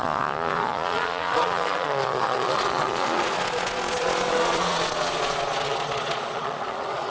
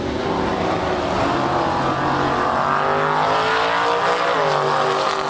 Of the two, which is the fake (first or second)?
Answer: first